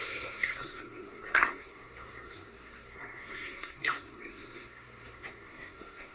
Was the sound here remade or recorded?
remade